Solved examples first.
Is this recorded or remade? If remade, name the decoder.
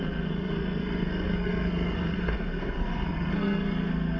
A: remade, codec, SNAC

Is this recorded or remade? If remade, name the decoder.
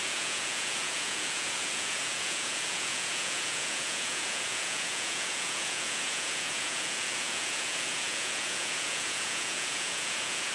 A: remade, vocoder, Vocos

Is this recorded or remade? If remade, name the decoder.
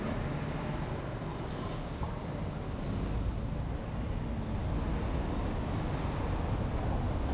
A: recorded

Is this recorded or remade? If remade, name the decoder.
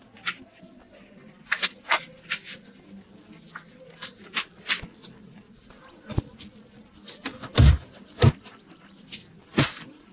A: recorded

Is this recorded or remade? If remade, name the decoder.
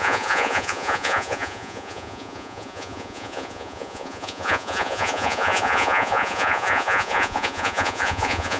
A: remade, vocoder, Vocos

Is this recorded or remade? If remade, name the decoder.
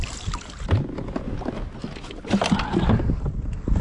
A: recorded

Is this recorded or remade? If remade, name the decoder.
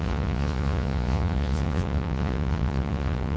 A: remade, vocoder, Vocos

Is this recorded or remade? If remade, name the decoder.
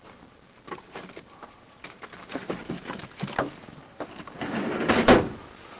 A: remade, vocoder, BigVGAN v2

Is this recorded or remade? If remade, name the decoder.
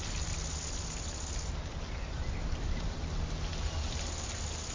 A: recorded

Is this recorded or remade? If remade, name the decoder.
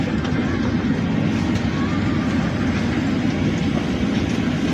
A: recorded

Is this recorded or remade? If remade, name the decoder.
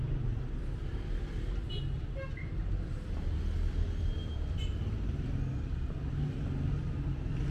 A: recorded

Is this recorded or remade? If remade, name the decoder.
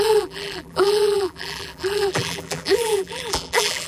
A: remade, vocoder, BigVGAN v2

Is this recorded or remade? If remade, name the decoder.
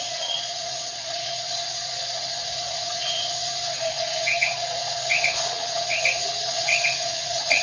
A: remade, vocoder, Vocos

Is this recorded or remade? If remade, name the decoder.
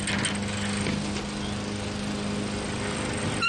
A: recorded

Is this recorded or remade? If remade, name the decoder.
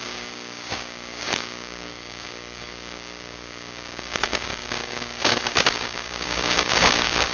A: remade, codec, DAC